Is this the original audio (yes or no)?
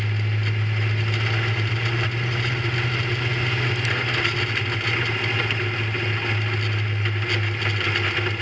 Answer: yes